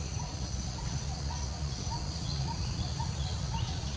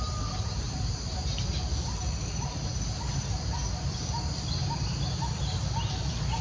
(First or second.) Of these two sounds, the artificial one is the first